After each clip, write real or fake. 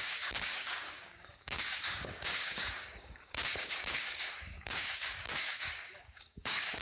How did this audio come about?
fake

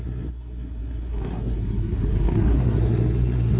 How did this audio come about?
fake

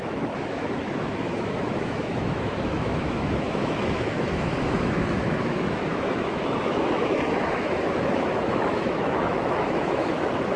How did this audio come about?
fake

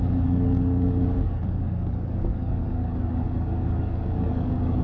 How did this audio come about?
fake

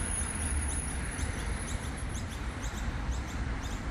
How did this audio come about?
fake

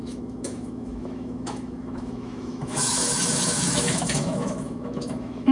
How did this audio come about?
fake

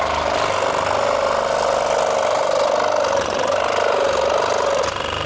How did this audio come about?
real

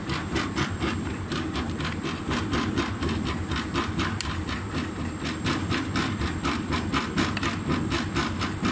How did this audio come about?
real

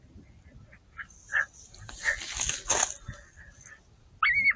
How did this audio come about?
real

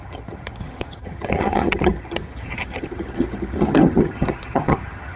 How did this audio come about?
fake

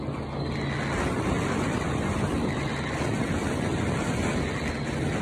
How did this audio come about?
real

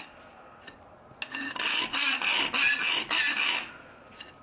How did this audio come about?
real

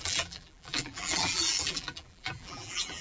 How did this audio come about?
fake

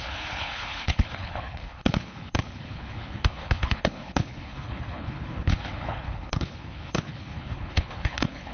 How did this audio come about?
fake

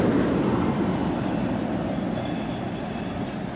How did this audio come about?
real